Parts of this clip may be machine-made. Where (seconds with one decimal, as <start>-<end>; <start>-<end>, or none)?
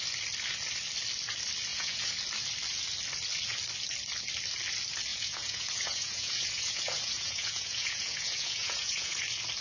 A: 1.7-2.2; 5.1-9.2